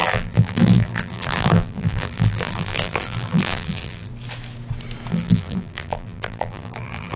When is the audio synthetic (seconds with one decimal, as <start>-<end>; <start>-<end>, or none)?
0.0-4.1; 5.1-7.2